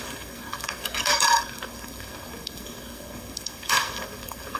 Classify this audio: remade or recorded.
remade